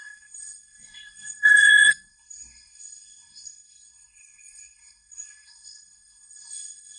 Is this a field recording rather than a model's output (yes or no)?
no